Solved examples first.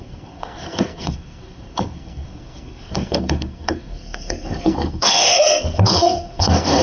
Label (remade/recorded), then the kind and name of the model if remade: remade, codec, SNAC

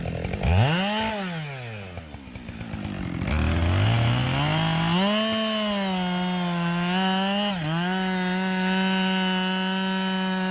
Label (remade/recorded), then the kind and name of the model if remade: recorded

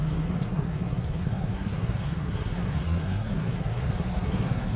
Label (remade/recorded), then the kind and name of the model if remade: remade, codec, SNAC